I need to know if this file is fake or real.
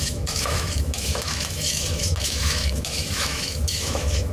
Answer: fake